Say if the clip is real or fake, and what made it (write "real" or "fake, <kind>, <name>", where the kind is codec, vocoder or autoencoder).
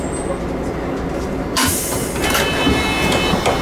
real